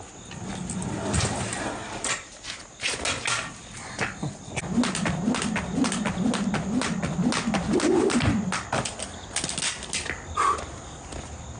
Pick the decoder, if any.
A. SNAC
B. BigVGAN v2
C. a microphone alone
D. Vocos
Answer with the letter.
C